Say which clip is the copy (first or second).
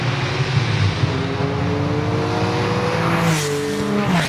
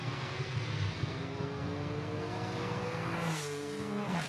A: second